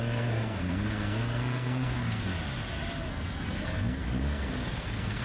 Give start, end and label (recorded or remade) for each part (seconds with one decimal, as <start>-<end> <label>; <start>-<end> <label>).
0.0-2.3 remade; 2.3-3.1 recorded; 3.1-5.2 remade